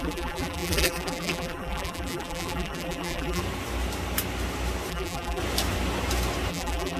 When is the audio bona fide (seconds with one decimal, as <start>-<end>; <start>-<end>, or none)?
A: 3.4-4.9; 5.4-6.5